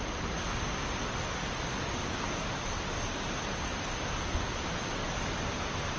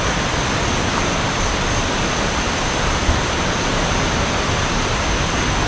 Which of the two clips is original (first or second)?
first